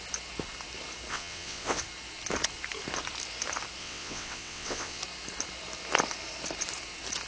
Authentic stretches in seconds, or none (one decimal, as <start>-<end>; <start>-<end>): 0.0-1.1; 1.8-3.8; 5.0-7.3